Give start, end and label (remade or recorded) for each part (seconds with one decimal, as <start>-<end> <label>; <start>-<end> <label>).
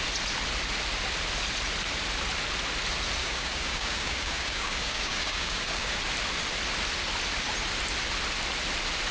0.0-3.2 recorded; 3.2-6.0 remade; 6.0-9.1 recorded